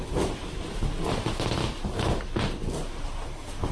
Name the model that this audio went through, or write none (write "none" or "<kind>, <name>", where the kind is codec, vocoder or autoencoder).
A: none